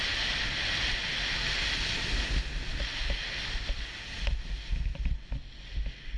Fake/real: real